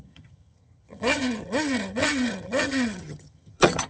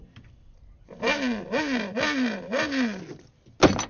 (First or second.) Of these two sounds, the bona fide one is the second